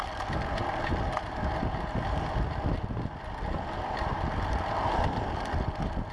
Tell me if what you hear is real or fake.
real